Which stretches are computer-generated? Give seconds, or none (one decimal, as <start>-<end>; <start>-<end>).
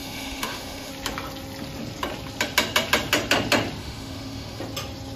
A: 0.0-0.9; 3.8-4.6